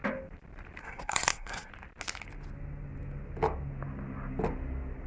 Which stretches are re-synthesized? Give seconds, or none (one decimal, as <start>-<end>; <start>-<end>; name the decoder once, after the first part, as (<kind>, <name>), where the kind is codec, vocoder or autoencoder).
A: 0.8-1.7 (codec, SNAC)